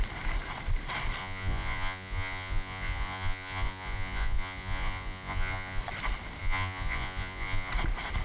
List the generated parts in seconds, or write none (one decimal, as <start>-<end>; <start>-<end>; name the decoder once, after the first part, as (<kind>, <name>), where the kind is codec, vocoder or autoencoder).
1.2-5.8 (vocoder, Vocos); 6.4-7.7